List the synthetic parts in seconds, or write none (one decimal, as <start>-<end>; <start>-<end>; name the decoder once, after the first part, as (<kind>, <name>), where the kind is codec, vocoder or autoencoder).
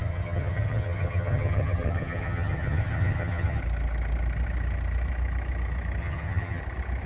0.0-3.6 (vocoder, HiFi-GAN); 6.0-6.6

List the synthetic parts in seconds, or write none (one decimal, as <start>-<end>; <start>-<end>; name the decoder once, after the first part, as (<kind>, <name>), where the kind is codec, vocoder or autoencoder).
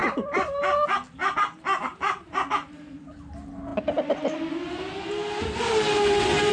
0.0-0.6 (vocoder, BigVGAN v2); 1.9-3.1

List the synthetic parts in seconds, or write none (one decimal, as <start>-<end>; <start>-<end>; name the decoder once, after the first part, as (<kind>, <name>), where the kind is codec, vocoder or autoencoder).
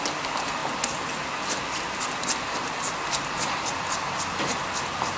none